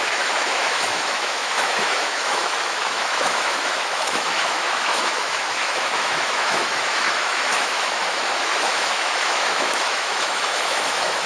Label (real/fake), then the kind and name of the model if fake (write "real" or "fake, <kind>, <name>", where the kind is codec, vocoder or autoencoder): fake, autoencoder, DAC-VAE